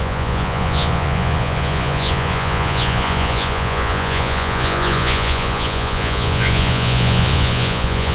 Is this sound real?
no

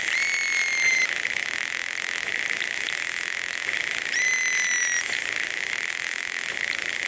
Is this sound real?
yes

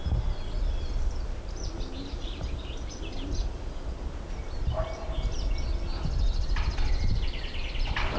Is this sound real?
yes